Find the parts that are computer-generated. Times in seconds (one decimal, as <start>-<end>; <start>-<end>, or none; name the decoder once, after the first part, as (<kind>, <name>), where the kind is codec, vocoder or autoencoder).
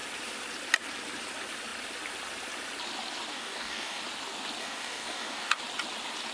3.3-4.0 (codec, DAC); 4.6-5.6